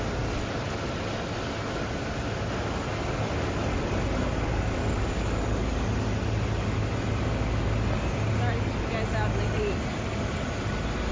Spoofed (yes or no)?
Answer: no